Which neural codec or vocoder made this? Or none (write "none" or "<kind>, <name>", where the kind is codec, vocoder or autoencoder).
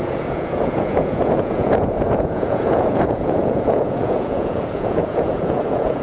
vocoder, Vocos